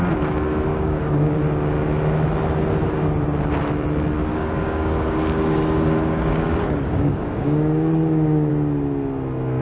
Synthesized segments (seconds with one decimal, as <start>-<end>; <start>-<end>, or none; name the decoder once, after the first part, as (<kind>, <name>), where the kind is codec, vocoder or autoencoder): 0.7-1.4 (codec, DAC); 4.3-8.5